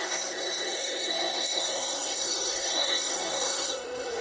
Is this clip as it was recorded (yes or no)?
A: no